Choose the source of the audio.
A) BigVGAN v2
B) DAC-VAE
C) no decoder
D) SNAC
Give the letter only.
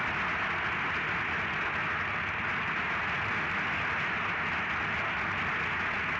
C